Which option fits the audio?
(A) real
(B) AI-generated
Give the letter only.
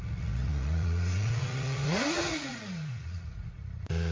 B